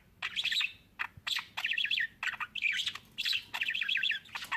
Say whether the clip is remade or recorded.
recorded